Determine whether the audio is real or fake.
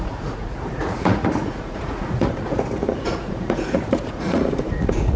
fake